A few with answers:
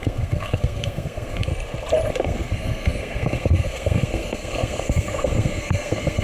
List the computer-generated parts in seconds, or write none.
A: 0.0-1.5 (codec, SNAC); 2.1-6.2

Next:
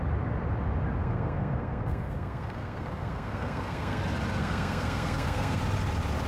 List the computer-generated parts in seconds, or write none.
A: 1.0-4.0 (codec, SNAC); 4.4-5.6